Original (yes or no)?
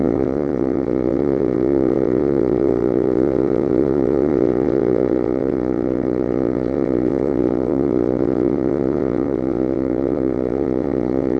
no